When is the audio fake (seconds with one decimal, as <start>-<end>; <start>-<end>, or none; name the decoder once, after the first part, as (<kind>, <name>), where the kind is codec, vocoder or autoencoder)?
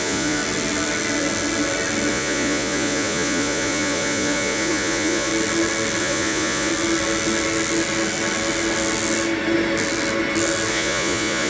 0.0-0.4 (vocoder, Vocos); 2.1-5.3; 6.0-6.7; 10.7-11.5